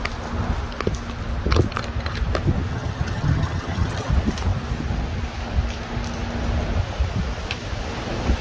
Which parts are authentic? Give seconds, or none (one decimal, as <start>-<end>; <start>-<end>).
0.0-2.7; 4.1-8.4